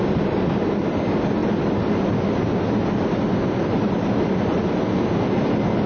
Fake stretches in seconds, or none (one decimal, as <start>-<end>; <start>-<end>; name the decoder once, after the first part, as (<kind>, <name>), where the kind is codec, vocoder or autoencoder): none